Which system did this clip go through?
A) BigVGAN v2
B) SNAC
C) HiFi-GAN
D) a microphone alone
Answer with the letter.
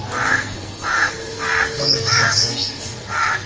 B